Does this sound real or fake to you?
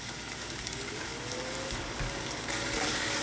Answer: fake